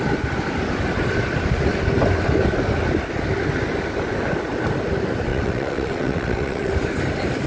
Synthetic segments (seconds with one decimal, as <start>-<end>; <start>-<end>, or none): 5.3-6.7